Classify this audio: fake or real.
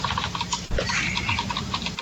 fake